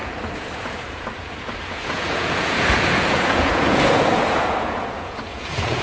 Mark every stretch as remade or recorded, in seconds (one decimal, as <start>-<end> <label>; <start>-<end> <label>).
0.0-5.8 remade

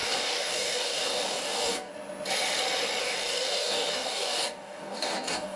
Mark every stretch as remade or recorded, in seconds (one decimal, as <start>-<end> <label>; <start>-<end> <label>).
0.0-1.9 remade; 1.9-3.0 recorded; 3.0-5.6 remade

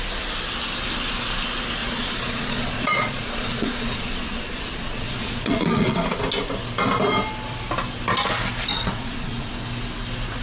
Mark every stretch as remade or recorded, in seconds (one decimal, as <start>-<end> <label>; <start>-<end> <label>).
0.0-1.8 recorded; 1.8-6.2 remade; 6.2-8.7 recorded; 8.7-9.5 remade; 9.5-10.4 recorded

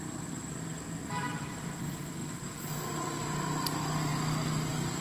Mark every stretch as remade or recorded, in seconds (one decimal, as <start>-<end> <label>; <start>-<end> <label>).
0.0-1.0 recorded; 1.0-1.6 remade; 1.6-5.0 recorded

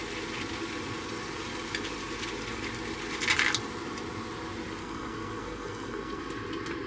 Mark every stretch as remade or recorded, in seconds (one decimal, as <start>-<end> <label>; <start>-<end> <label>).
0.0-4.8 recorded; 4.8-6.2 remade; 6.2-6.9 recorded

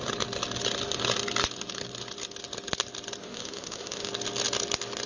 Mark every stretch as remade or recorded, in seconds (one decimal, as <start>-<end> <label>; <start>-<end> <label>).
0.0-3.2 recorded; 3.2-4.1 remade; 4.1-5.1 recorded